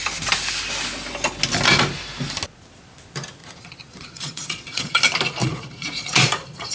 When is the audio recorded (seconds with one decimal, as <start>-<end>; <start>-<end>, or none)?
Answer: 0.0-3.4; 5.0-5.4